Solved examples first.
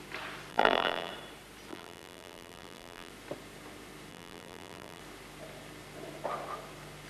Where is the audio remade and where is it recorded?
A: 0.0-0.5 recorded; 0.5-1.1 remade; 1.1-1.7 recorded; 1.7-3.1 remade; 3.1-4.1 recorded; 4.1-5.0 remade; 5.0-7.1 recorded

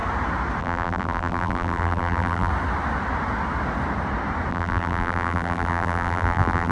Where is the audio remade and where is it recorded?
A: 0.0-0.6 recorded; 0.6-2.5 remade; 2.5-4.5 recorded; 4.5-6.7 remade

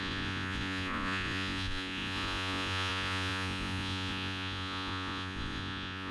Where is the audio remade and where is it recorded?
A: 0.0-6.1 remade

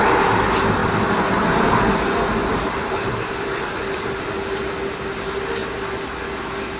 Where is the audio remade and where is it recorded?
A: 0.0-2.4 recorded; 2.4-4.3 remade; 4.3-6.8 recorded

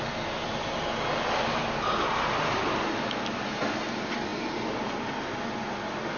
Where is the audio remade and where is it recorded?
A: 0.0-6.2 recorded

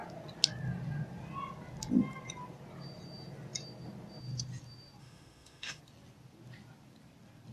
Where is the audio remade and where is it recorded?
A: 0.0-5.0 recorded; 5.0-5.8 remade; 5.8-7.5 recorded

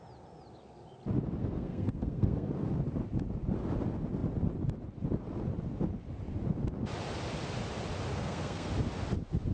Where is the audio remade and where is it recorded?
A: 0.0-1.4 recorded; 1.4-2.5 remade; 2.5-8.1 recorded; 8.1-8.7 remade; 8.7-9.5 recorded

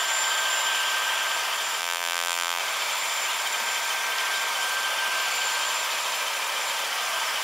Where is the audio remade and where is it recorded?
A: 0.0-1.8 recorded; 1.8-2.6 remade; 2.6-7.4 recorded